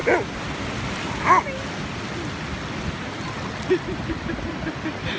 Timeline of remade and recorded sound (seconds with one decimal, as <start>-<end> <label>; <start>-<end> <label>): 0.0-5.2 recorded